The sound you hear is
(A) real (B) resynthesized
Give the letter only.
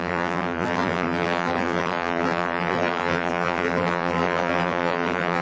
B